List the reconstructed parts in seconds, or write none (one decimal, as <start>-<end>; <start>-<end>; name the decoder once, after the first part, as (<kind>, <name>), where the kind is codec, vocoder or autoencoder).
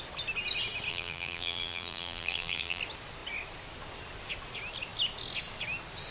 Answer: 0.9-2.8 (vocoder, BigVGAN v2)